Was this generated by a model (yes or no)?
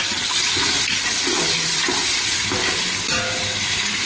no